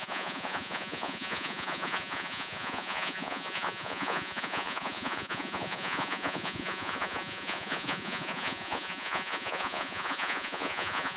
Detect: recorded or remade remade